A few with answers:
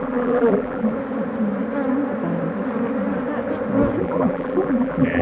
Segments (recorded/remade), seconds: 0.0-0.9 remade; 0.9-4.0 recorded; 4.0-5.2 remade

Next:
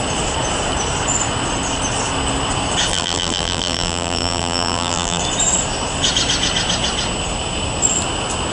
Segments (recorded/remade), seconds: 0.0-2.9 recorded; 2.9-5.2 remade; 5.2-8.5 recorded